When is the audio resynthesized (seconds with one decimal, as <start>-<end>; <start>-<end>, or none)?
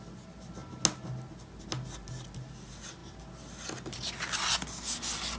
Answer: none